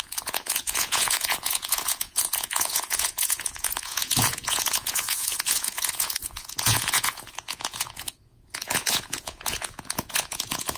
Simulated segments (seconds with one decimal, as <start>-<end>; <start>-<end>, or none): 0.0-10.8